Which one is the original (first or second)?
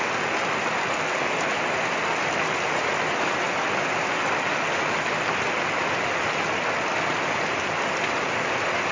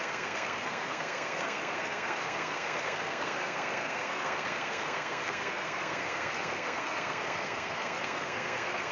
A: first